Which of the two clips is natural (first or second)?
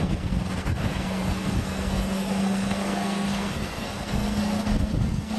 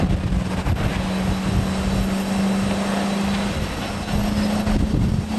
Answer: second